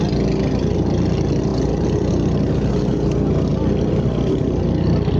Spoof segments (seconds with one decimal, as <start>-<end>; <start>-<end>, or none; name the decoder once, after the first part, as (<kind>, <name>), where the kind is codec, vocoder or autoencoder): none

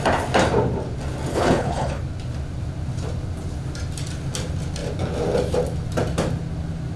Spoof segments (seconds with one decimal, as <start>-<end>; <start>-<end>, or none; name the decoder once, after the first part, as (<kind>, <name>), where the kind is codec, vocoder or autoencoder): 1.3-2.0 (codec, HILCodec)

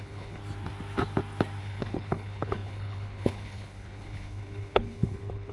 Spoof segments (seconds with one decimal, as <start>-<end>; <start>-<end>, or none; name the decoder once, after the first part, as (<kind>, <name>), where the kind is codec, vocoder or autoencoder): 0.0-0.4 (codec, HILCodec); 1.6-5.5

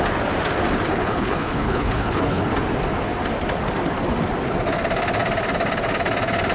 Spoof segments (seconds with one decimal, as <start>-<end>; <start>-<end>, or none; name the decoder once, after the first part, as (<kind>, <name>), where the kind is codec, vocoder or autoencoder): 0.9-2.5 (codec, HILCodec)

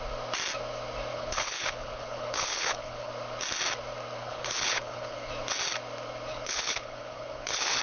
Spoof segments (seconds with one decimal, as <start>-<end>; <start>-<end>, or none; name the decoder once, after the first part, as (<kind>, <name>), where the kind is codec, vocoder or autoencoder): 1.1-3.1 (codec, HILCodec); 4.2-5.3; 6.3-7.8

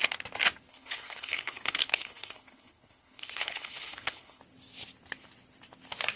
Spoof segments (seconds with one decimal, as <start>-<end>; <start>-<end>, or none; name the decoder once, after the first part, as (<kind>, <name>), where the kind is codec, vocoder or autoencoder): 0.7-4.4 (codec, HILCodec)

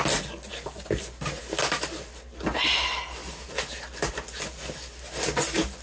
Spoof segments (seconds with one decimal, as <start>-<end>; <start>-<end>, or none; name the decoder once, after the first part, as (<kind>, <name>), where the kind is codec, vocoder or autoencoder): none